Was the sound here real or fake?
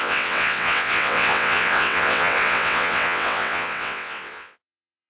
fake